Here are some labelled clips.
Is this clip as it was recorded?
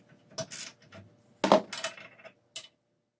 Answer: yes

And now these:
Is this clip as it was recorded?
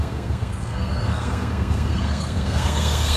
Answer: no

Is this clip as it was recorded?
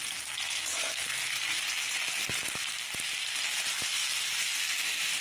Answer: yes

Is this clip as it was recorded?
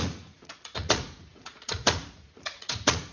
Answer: no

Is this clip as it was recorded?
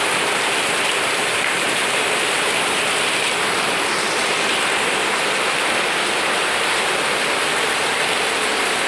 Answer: no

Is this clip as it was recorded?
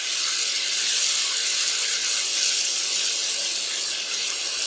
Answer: yes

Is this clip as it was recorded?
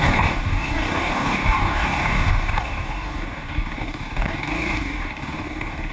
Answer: no